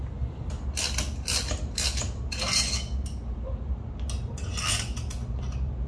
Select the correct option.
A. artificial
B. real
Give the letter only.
B